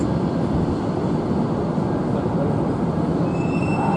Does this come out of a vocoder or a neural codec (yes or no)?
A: no